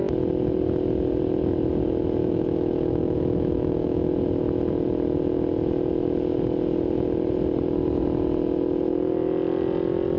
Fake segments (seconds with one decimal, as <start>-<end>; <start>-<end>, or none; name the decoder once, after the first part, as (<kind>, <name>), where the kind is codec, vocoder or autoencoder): 2.2-4.1 (autoencoder, DAC-VAE)